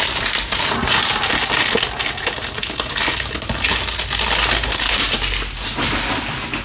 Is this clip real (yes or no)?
yes